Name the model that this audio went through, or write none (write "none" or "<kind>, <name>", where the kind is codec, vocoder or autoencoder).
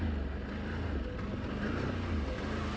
none